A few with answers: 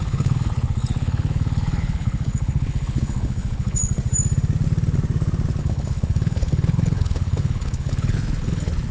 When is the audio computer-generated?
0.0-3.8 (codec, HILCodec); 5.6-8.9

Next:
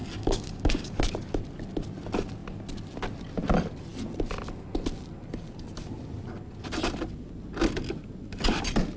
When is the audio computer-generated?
0.0-1.0 (codec, DAC)

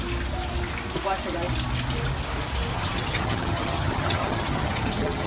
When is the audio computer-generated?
2.7-5.3 (vocoder, HiFi-GAN)

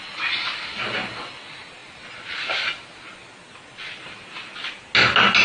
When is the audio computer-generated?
none

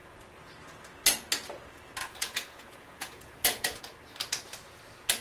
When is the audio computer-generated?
2.0-3.8 (vocoder, Vocos)

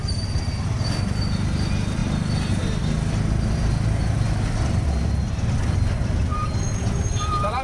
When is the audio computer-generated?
2.0-2.8 (vocoder, BigVGAN v2)

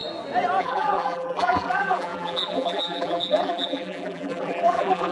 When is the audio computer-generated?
0.6-5.1 (vocoder, BigVGAN v2)